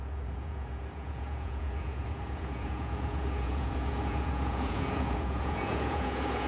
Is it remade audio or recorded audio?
remade